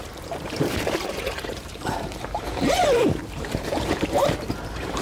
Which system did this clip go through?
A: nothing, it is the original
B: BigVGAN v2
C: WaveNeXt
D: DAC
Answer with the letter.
B